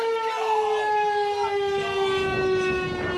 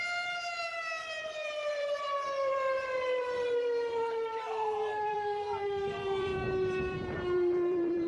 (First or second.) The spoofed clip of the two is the second